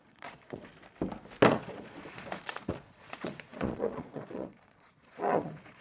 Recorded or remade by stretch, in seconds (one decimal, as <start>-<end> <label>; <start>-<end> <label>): 0.0-0.7 remade; 0.7-1.5 recorded; 1.5-5.8 remade